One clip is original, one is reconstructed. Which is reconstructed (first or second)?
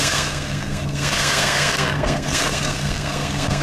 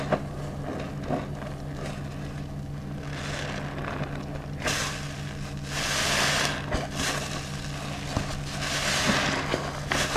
first